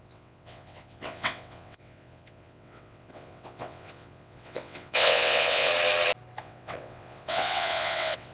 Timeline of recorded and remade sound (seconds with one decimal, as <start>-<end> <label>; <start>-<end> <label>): 0.0-5.7 remade; 5.7-6.4 recorded; 6.4-8.3 remade